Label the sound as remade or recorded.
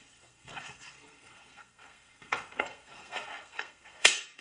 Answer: remade